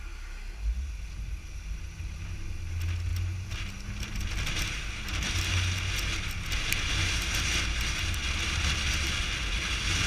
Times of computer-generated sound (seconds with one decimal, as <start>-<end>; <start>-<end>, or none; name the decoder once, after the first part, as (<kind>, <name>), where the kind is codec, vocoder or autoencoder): none